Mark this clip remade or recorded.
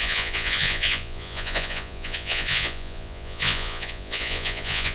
remade